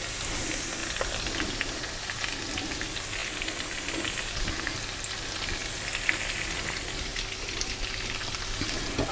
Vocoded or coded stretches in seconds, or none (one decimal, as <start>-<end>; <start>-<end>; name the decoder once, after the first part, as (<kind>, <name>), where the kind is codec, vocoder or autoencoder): 0.8-2.3 (vocoder, BigVGAN v2); 7.1-7.7